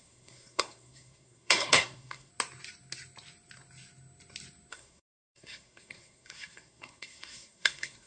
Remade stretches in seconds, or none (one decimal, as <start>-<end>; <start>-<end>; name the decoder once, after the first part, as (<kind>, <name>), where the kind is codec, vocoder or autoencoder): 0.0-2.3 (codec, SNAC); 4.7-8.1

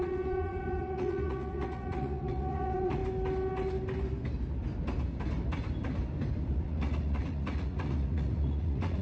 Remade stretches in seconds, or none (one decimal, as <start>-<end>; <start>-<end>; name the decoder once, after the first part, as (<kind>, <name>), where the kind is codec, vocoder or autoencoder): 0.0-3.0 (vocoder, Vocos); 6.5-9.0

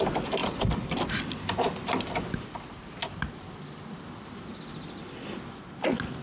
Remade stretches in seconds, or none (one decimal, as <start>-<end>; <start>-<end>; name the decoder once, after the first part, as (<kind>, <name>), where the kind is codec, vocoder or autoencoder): none

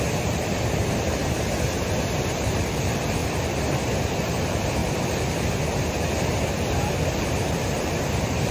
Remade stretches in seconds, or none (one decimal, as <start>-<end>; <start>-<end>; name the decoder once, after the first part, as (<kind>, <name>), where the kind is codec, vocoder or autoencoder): 0.0-1.2 (vocoder, BigVGAN v2); 2.2-4.8; 7.2-8.5

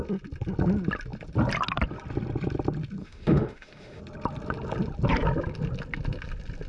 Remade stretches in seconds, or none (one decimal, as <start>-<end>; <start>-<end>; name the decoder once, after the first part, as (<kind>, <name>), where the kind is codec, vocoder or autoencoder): 3.0-4.0 (autoencoder, DAC-VAE)

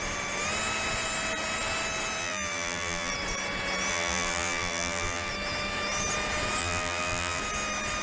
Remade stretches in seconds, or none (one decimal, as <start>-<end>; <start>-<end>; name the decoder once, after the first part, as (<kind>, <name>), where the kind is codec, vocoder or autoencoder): 2.2-3.1 (vocoder, BigVGAN v2); 3.9-5.3; 6.6-7.4

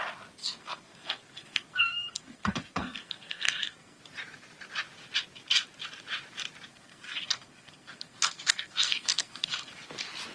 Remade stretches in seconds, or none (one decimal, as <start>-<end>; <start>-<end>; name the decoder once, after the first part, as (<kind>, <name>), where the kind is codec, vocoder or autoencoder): 0.4-4.0 (codec, SNAC); 6.7-9.7